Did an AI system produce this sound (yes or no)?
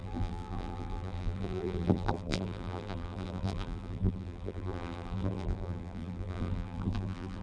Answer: yes